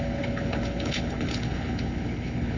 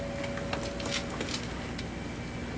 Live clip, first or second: second